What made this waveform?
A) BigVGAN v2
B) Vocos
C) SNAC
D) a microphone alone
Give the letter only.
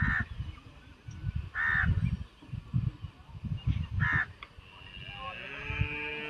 D